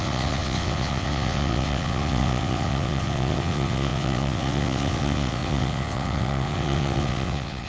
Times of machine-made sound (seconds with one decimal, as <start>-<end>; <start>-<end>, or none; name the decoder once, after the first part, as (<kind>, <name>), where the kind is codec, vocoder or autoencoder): 0.0-7.7 (vocoder, WaveNeXt)